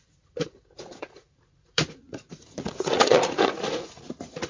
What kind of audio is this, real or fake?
fake